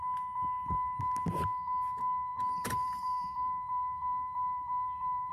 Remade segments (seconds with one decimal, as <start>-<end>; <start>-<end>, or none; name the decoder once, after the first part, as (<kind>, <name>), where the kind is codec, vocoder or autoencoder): 2.3-5.3 (vocoder, BigVGAN v2)

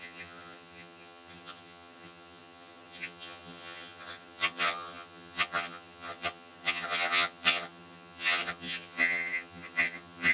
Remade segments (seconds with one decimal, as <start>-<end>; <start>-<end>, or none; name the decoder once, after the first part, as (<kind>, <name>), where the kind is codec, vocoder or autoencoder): 0.0-10.3 (vocoder, HiFi-GAN)